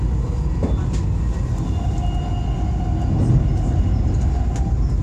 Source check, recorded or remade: recorded